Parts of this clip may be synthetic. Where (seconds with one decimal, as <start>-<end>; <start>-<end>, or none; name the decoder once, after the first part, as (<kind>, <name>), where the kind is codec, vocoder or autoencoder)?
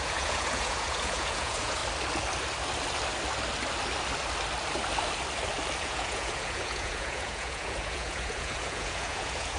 0.0-1.8 (vocoder, Vocos); 5.8-9.6